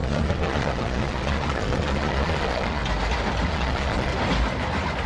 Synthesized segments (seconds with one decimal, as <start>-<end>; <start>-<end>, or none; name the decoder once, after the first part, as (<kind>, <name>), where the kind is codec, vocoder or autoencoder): 0.0-2.8 (vocoder, Vocos); 3.5-4.1